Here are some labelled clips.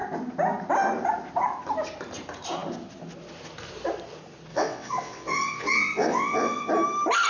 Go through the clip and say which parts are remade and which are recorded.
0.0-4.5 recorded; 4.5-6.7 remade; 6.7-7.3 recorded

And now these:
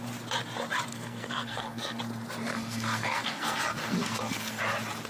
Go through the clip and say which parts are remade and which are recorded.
0.0-0.9 recorded; 0.9-2.0 remade; 2.0-2.5 recorded; 2.5-4.6 remade; 4.6-5.1 recorded

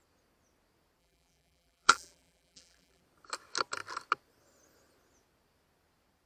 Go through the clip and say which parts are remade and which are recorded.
0.0-1.0 recorded; 1.0-3.0 remade; 3.0-6.3 recorded

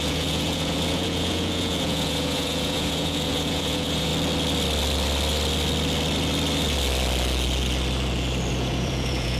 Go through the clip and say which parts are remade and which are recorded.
0.0-4.1 remade; 4.1-8.5 recorded; 8.5-9.4 remade

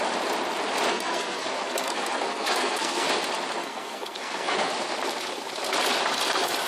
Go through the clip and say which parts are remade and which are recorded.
0.0-0.9 recorded; 0.9-3.1 remade; 3.1-3.6 recorded; 3.6-4.7 remade; 4.7-6.7 recorded

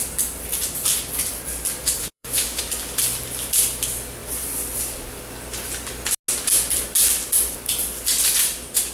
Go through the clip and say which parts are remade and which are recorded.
0.0-2.0 recorded; 2.0-2.6 remade; 2.6-8.9 recorded

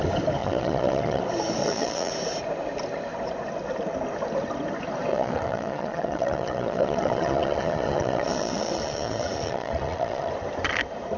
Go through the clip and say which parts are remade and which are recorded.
0.0-0.4 recorded; 0.4-1.2 remade; 1.2-1.6 recorded; 1.6-2.1 remade; 2.1-5.1 recorded; 5.1-10.3 remade; 10.3-11.2 recorded

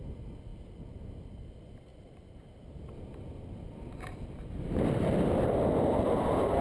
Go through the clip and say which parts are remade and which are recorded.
0.0-6.6 recorded